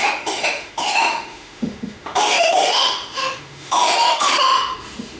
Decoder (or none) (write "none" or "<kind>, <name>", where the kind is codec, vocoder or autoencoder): autoencoder, DAC-VAE